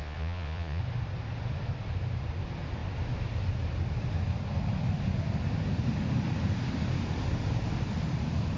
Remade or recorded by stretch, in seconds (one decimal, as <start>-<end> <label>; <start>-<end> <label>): 0.0-0.8 remade; 0.8-8.6 recorded